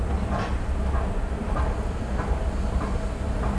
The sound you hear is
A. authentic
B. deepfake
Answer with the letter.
A